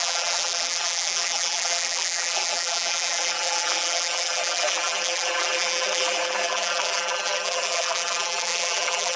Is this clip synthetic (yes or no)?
yes